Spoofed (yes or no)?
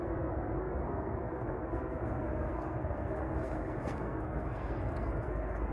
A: yes